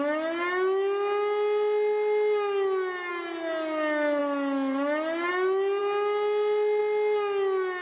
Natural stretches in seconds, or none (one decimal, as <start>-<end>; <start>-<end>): 0.0-7.8